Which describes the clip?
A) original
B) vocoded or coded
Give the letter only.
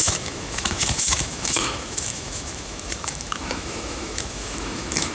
B